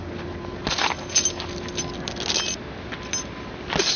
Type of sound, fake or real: real